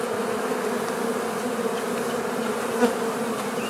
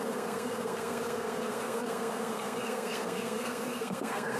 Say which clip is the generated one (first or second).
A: second